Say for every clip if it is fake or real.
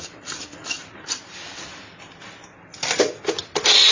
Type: real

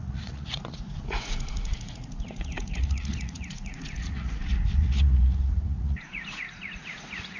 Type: fake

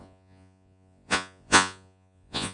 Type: fake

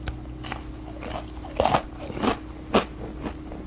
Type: real